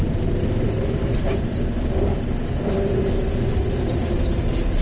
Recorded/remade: remade